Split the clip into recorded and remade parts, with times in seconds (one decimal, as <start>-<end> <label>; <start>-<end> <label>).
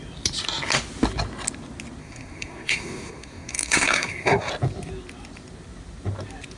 0.0-2.0 recorded; 2.0-4.5 remade; 4.5-6.6 recorded